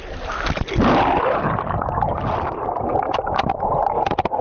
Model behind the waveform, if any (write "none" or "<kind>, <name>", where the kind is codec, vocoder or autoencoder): none